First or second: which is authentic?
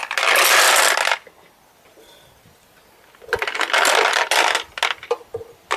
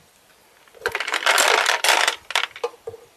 first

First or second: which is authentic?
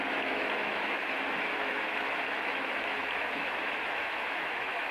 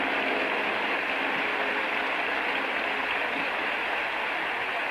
second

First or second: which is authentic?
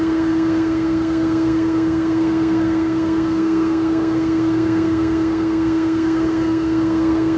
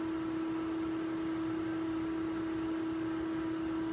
second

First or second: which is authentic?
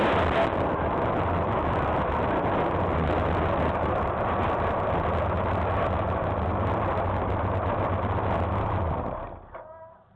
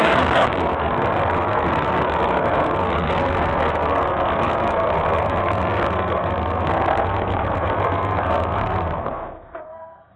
first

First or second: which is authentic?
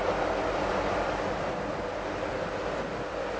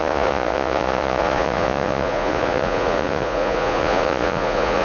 first